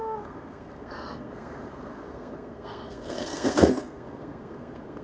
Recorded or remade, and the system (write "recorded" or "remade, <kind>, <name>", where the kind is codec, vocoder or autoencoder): remade, codec, SNAC